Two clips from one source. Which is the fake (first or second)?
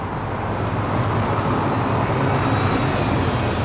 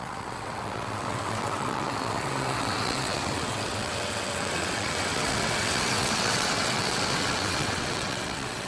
second